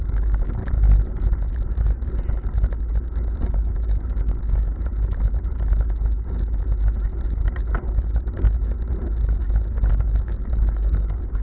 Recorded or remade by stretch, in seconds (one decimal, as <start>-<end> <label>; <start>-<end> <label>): 0.0-0.6 remade; 0.6-3.4 recorded; 3.4-4.9 remade; 4.9-9.9 recorded; 9.9-11.4 remade